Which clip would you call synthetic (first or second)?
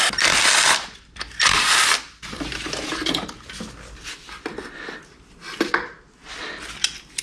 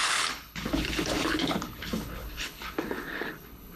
second